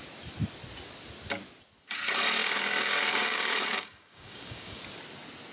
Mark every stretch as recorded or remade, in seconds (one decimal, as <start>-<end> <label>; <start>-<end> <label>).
0.0-2.4 recorded; 2.4-4.8 remade; 4.8-5.5 recorded